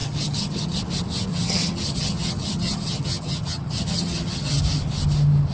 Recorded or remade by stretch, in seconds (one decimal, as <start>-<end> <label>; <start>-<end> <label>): 0.0-0.8 remade; 0.8-1.3 recorded; 1.3-4.6 remade; 4.6-5.5 recorded